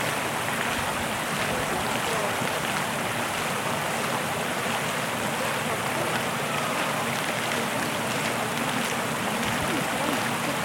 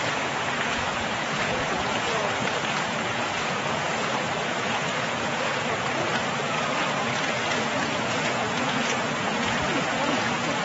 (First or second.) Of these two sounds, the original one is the first